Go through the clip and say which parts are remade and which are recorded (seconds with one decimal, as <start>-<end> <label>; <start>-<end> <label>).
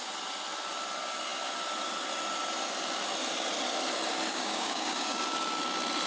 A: 0.0-4.3 recorded; 4.3-5.2 remade; 5.2-6.1 recorded